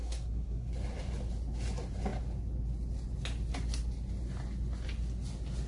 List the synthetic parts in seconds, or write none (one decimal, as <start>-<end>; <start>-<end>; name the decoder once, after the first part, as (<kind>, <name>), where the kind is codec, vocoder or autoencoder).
0.0-0.7 (codec, SNAC)